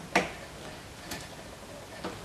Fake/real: real